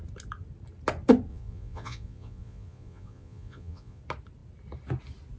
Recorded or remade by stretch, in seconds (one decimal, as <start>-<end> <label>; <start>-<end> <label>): 0.0-1.3 recorded; 1.3-4.0 remade; 4.0-5.4 recorded